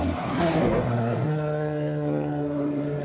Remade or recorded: remade